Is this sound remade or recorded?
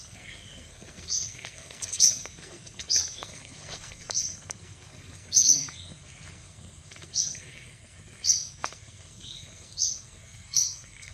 remade